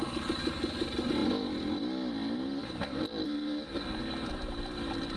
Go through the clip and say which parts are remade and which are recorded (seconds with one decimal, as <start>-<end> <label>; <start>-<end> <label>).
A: 0.0-5.2 recorded